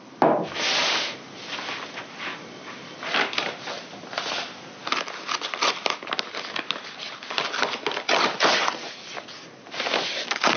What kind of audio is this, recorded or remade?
recorded